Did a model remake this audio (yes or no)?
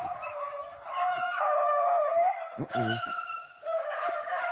yes